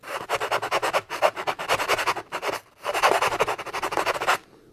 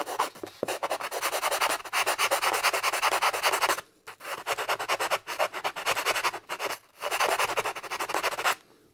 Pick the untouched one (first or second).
second